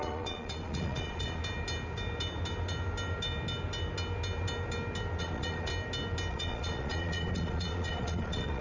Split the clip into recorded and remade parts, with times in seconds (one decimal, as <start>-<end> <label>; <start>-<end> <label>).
0.0-1.4 remade; 1.4-5.2 recorded; 5.2-5.7 remade; 5.7-6.3 recorded; 6.3-8.6 remade